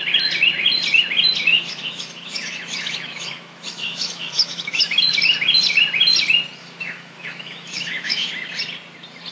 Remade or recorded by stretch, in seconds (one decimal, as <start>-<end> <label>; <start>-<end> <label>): 0.0-1.5 recorded; 1.5-5.0 remade; 5.0-6.6 recorded; 6.6-8.3 remade; 8.3-9.3 recorded